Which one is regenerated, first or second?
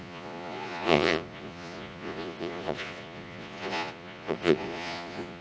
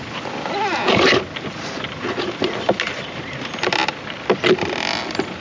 first